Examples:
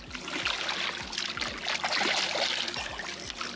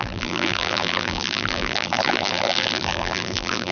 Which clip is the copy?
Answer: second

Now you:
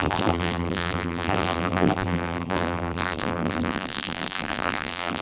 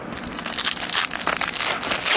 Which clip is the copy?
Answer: first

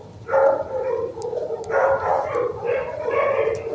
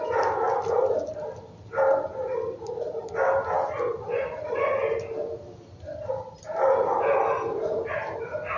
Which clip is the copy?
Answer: first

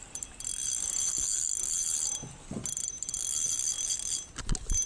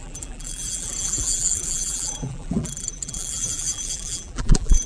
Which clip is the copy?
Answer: second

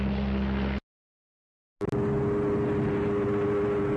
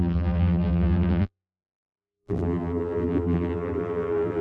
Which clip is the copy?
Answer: second